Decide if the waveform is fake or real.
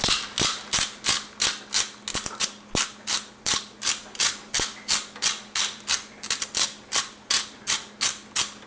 real